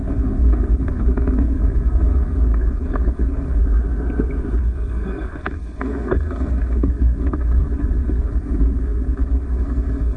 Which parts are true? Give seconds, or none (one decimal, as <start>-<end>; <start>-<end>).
3.6-4.6